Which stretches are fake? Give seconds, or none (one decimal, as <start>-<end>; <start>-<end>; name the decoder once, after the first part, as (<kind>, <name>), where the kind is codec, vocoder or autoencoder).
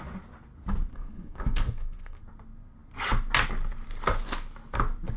0.9-2.2 (codec, SNAC)